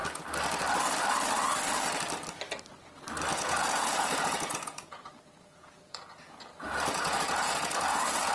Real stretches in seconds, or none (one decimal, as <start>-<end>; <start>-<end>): 0.0-3.3